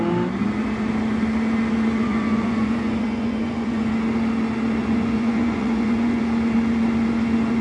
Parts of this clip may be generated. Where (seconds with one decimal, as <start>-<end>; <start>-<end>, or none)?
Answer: 2.0-3.9; 4.8-6.2

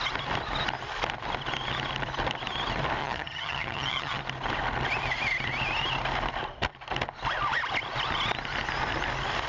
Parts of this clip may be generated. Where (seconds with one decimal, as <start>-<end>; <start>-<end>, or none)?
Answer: 3.0-4.2

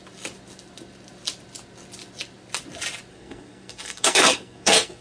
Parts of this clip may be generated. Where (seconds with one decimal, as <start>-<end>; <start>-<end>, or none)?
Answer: 3.1-5.0

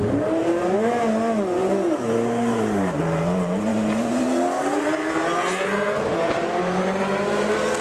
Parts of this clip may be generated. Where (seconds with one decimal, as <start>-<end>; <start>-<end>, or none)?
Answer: 0.4-1.0; 1.6-3.0

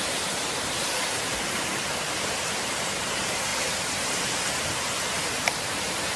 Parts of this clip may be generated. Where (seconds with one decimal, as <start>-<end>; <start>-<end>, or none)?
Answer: 0.0-6.2

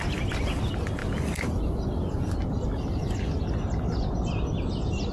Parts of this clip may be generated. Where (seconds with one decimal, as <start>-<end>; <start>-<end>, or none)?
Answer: none

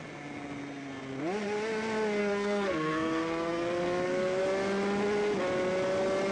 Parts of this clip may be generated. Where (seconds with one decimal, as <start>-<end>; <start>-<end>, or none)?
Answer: 2.2-4.4

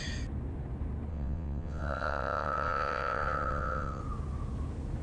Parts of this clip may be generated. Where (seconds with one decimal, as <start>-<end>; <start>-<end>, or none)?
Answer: 1.1-4.0